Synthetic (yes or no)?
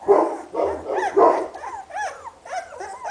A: no